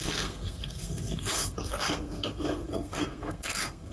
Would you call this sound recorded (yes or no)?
no